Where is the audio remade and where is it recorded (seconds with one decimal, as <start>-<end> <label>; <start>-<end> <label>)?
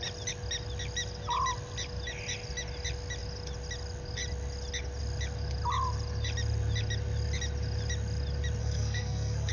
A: 0.0-8.6 recorded; 8.6-9.5 remade